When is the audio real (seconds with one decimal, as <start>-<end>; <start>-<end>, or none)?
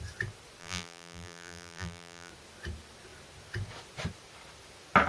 0.0-0.6; 2.3-5.1